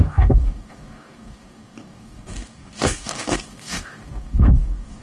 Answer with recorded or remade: remade